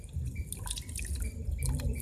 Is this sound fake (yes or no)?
no